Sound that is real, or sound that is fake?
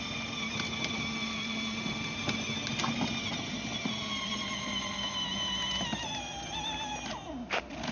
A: real